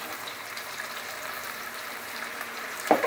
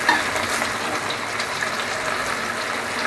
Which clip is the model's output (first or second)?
first